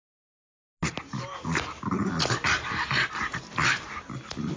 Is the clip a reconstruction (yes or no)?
no